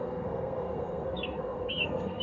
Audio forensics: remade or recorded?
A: remade